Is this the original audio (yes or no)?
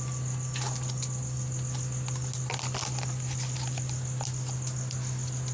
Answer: yes